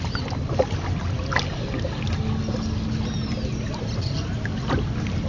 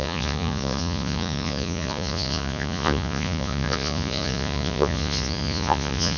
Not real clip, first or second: second